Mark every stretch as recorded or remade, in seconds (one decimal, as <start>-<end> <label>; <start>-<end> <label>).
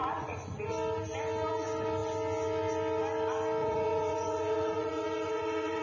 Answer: 0.0-0.6 remade; 0.6-3.6 recorded; 3.6-5.8 remade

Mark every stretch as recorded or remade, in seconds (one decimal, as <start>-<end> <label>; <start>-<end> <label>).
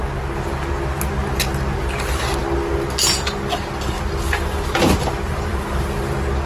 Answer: 0.0-6.5 recorded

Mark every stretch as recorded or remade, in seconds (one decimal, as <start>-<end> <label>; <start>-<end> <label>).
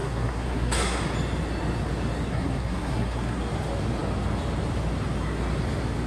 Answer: 0.0-1.0 remade; 1.0-2.3 recorded; 2.3-3.4 remade; 3.4-6.1 recorded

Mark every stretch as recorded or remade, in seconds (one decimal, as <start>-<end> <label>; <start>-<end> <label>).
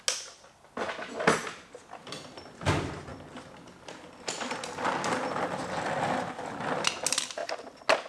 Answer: 0.0-8.1 recorded